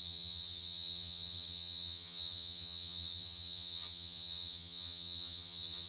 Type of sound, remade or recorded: remade